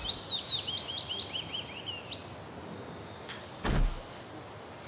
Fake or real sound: real